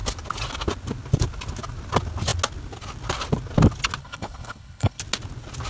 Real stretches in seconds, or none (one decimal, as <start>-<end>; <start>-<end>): 0.0-4.0; 5.0-5.7